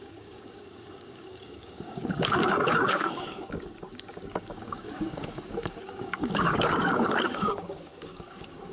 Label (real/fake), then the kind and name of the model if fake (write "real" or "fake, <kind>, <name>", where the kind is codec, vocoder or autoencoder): fake, codec, DAC